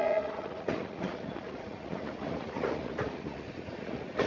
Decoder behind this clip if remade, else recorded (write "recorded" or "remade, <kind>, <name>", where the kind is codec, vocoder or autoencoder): remade, vocoder, Vocos